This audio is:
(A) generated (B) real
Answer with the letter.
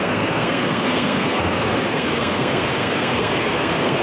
A